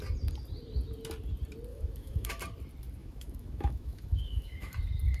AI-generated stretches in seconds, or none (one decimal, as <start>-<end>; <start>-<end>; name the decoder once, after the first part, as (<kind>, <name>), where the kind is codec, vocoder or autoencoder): 1.7-2.4 (autoencoder, DAC-VAE); 3.0-4.7